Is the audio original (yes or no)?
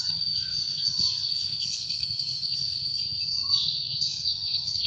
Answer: no